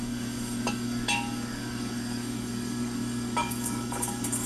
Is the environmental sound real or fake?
fake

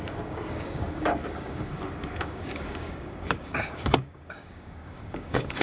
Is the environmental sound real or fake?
fake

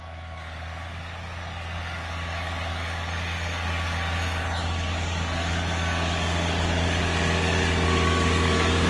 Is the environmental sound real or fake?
fake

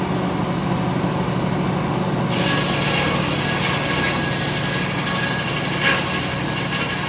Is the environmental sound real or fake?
real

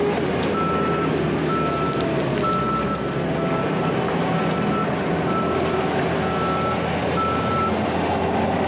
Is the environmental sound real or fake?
real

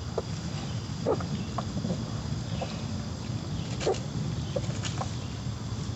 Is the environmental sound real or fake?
real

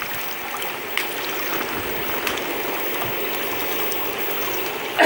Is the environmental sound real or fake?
real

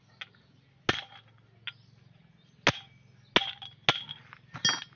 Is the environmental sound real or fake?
real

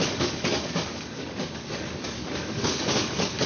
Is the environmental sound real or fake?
fake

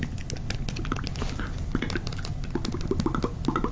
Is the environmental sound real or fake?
real